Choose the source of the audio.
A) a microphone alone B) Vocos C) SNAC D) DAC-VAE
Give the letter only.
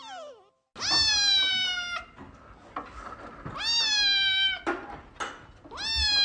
A